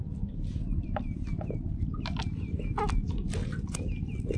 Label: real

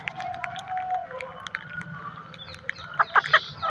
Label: real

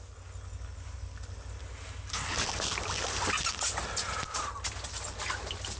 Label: real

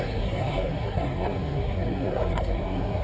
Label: fake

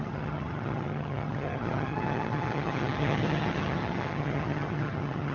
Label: fake